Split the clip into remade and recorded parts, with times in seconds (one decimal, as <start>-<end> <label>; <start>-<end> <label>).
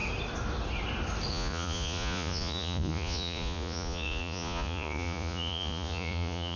0.0-1.3 recorded; 1.3-6.6 remade